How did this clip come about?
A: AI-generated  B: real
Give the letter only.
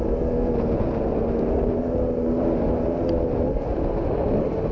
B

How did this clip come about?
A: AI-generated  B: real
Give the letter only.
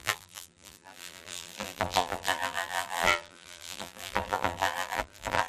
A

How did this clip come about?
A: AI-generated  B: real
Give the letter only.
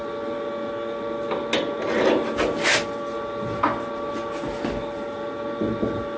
B